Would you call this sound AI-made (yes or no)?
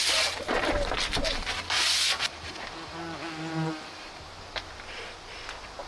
no